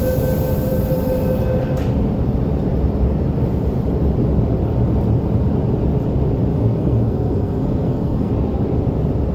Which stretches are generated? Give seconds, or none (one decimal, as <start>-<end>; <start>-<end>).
6.5-8.3